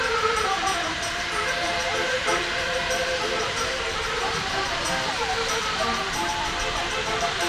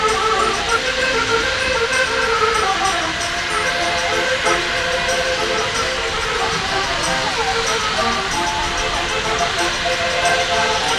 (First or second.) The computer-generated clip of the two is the first